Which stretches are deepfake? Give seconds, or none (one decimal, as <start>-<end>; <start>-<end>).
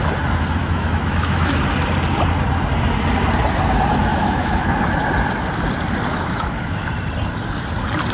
0.6-1.6; 4.1-4.8; 6.1-6.9